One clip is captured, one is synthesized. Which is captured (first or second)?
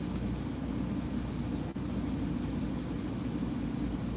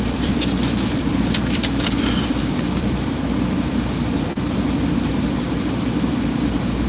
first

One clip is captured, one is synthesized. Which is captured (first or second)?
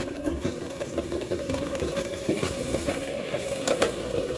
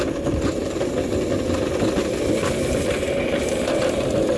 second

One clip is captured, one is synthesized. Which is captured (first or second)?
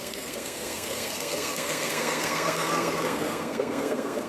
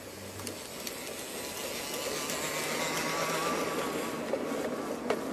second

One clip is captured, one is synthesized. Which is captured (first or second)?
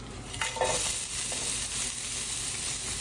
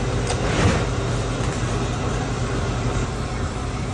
first